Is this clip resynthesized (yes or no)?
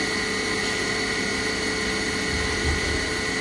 no